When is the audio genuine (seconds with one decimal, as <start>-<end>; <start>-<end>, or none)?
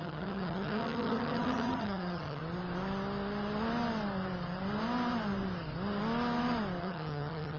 2.4-6.8